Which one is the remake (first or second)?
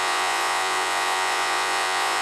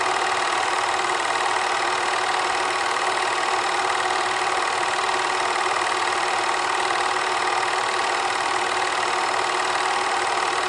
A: first